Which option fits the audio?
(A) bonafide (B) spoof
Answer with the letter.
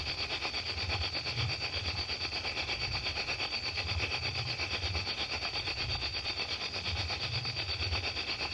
A